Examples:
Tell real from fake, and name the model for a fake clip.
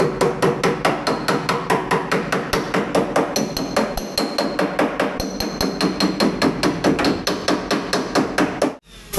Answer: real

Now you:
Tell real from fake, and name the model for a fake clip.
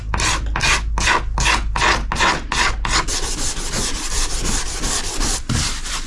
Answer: real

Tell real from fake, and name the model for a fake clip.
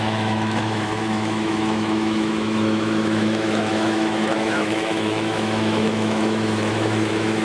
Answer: fake, autoencoder, DAC-VAE